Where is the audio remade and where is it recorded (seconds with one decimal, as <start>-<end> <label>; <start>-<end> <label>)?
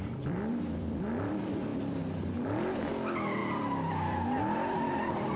0.0-1.7 remade; 1.7-2.3 recorded; 2.3-5.4 remade